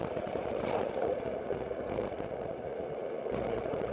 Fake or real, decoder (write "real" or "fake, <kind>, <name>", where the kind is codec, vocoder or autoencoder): fake, vocoder, Vocos